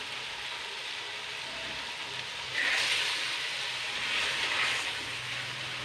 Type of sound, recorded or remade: recorded